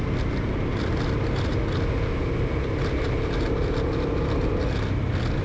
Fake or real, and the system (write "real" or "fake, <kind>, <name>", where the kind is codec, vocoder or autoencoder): real